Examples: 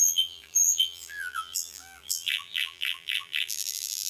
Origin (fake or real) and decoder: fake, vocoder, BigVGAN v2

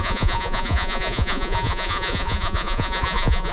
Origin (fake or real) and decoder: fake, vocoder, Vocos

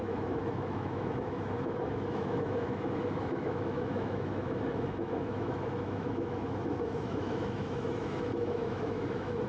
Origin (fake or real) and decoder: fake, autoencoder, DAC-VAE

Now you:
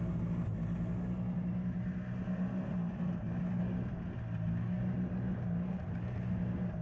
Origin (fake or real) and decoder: real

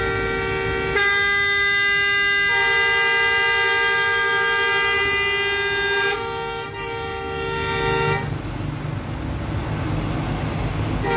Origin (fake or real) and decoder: real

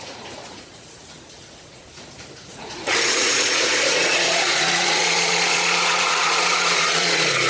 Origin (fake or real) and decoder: fake, vocoder, Vocos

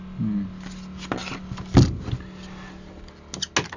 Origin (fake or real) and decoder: real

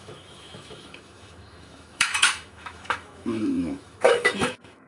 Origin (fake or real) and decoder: fake, autoencoder, DAC-VAE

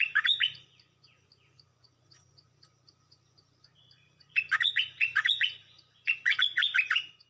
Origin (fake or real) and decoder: fake, vocoder, Vocos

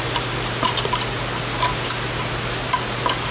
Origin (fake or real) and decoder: real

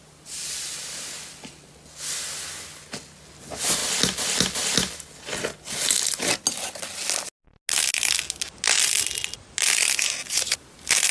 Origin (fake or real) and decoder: real